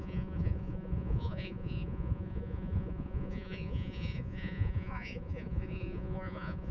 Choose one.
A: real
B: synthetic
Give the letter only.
B